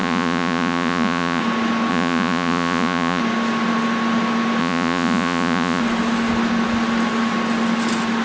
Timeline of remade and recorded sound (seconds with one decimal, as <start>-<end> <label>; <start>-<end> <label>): 0.0-1.4 remade; 1.4-1.9 recorded; 1.9-3.2 remade; 3.2-4.6 recorded; 4.6-5.8 remade; 5.8-8.2 recorded